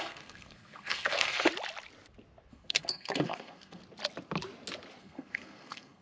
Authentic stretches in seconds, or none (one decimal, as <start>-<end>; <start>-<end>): 1.5-2.5; 3.8-5.0